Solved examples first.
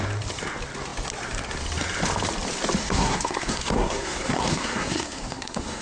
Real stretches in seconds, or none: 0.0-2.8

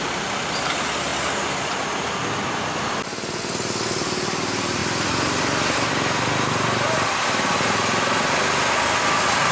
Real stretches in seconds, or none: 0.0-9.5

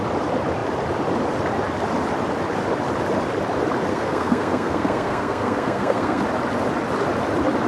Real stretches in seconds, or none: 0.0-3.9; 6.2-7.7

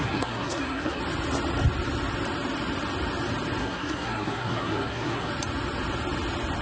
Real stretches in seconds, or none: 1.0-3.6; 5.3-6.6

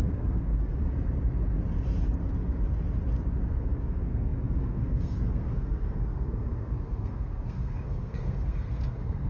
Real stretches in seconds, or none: 0.8-3.6

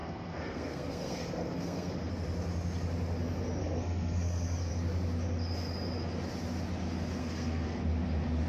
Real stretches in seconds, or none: 2.1-3.6; 4.7-7.2; 7.8-8.5